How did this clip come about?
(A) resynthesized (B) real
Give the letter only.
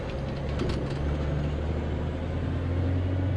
B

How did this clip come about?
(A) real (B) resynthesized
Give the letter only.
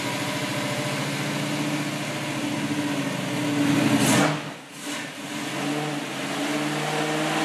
A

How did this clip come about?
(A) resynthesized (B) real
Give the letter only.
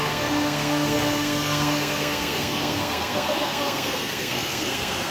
A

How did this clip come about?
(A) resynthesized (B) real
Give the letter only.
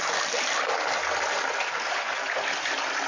B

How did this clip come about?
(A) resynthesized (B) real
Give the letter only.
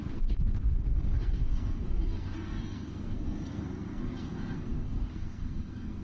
A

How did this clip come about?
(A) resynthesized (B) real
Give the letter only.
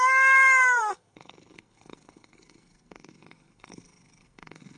A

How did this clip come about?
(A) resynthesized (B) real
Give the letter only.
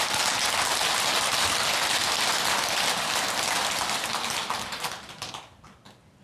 B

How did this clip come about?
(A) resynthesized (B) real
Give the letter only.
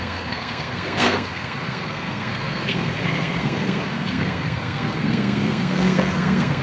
A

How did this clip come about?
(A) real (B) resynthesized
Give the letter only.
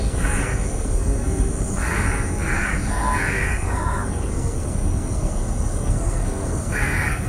B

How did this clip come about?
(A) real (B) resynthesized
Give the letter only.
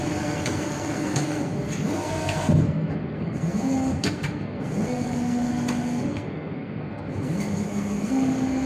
B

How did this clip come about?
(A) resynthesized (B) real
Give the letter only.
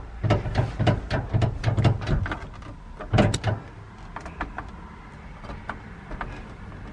B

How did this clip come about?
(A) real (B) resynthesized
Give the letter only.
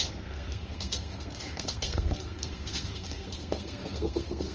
B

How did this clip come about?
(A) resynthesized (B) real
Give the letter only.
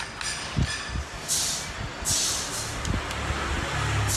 B